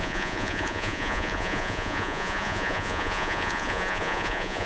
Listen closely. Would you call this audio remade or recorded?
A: remade